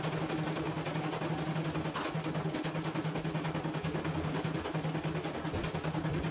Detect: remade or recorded recorded